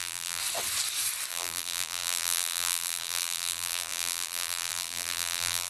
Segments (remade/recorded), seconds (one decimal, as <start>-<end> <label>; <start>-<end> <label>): 0.0-0.4 remade; 0.4-1.3 recorded; 1.3-5.7 remade